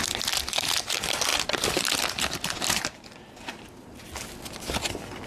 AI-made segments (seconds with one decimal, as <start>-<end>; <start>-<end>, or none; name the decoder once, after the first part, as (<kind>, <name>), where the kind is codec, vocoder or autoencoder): none